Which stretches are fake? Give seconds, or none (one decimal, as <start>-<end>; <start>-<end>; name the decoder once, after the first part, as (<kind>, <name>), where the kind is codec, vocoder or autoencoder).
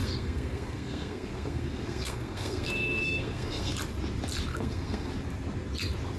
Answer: 0.0-3.7 (codec, SNAC); 4.5-5.1